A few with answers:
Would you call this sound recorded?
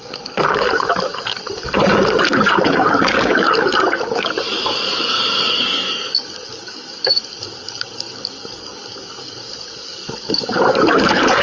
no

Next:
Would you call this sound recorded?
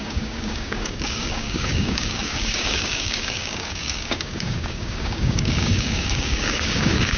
no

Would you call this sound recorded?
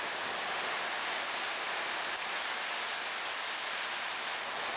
yes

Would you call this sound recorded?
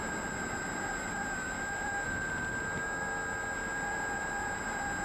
yes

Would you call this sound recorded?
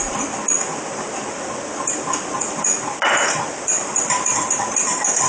yes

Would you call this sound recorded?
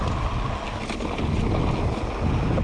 yes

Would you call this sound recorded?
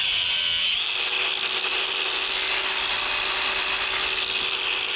yes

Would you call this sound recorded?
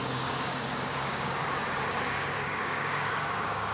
no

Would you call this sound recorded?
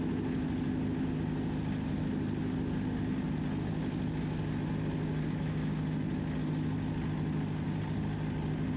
yes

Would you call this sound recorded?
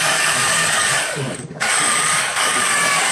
no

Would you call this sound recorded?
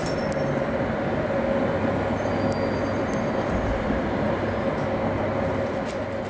yes